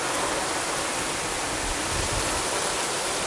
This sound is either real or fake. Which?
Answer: real